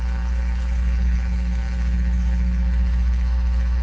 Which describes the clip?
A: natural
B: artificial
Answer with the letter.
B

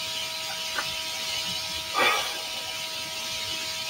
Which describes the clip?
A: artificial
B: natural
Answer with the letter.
B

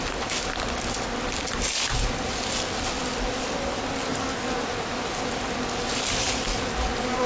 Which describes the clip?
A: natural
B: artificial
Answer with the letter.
A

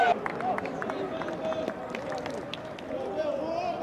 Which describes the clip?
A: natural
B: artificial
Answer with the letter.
A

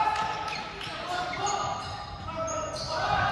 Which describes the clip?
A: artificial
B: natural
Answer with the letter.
B